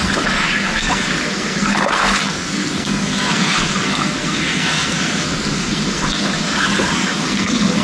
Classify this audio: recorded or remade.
remade